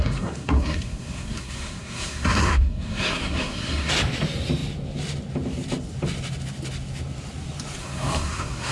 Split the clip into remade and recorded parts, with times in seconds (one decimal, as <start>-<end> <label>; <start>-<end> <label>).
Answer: 0.0-3.9 remade; 3.9-7.8 recorded; 7.8-8.7 remade